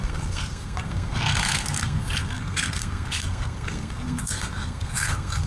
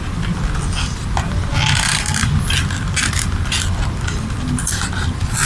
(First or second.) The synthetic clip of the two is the first